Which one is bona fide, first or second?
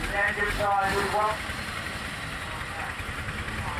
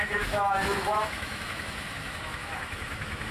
first